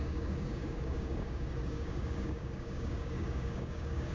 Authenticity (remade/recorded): remade